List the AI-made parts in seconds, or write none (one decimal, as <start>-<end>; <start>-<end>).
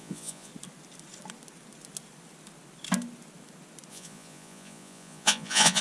0.0-0.5; 3.9-5.8